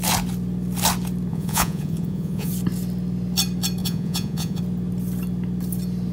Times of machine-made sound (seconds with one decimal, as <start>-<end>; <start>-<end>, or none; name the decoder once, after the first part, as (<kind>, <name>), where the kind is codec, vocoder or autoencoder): 1.3-2.5 (vocoder, Vocos); 3.8-4.6